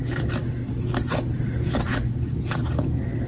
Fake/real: real